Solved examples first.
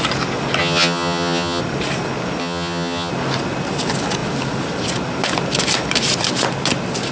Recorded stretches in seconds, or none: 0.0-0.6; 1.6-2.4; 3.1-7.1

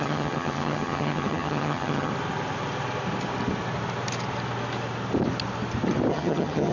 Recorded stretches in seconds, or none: 2.1-6.1

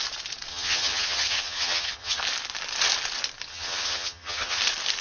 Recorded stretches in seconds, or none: 0.0-0.5; 2.2-3.5; 4.6-5.0